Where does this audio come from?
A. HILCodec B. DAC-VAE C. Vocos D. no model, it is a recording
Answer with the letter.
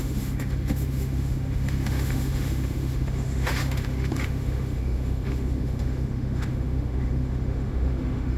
B